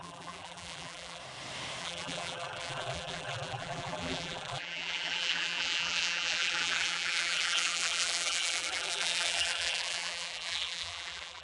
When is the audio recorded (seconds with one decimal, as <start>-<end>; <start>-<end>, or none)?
1.2-1.8